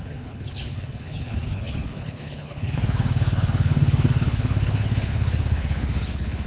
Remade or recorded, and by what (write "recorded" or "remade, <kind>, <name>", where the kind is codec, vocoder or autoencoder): remade, codec, HILCodec